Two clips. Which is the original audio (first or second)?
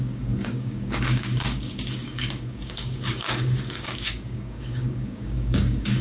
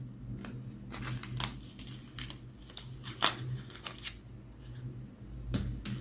second